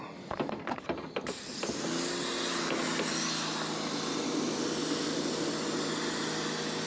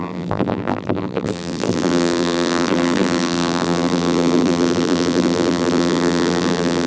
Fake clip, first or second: second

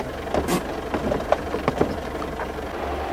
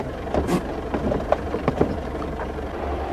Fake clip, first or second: second